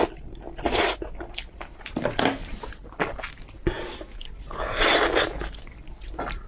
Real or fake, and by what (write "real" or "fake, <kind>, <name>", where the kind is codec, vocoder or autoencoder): real